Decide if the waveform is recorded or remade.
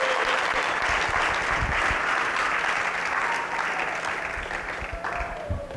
recorded